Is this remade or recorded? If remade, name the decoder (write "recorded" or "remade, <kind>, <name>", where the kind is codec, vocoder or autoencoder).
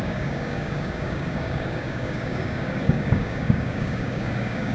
remade, codec, DAC